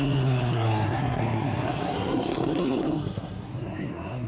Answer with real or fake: fake